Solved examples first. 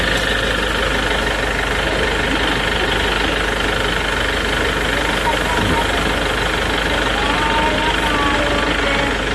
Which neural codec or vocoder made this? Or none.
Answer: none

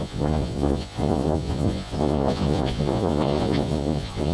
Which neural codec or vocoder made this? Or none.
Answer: vocoder, Vocos